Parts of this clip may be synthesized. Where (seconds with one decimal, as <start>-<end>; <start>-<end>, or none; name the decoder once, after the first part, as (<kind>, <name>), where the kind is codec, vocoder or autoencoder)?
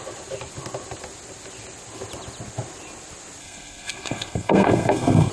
3.4-5.3 (codec, SNAC)